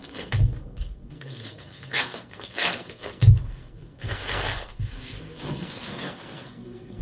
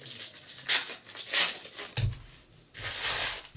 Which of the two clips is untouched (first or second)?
second